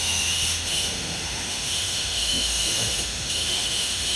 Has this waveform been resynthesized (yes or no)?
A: yes